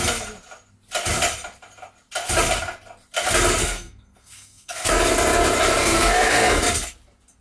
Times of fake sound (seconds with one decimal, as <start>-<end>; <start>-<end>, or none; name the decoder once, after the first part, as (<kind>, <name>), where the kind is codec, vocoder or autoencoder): 3.6-4.9 (codec, SNAC); 5.8-6.6